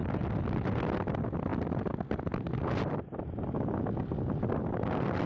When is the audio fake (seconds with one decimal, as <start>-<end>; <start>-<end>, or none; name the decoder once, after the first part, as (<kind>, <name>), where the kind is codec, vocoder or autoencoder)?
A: none